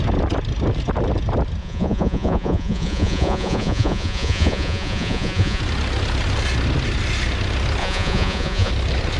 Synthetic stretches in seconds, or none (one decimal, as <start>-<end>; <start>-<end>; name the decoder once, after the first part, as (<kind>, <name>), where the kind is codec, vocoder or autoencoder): 1.6-5.6 (vocoder, Vocos); 7.8-8.7